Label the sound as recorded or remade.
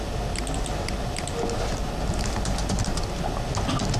recorded